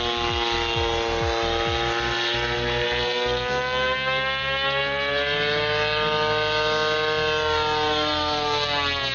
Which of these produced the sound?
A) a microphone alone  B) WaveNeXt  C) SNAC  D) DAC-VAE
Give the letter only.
A